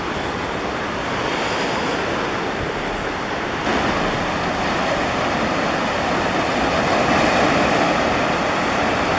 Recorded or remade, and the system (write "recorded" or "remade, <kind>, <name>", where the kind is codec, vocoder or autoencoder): recorded